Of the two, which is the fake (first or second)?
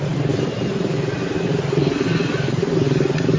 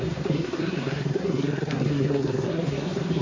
second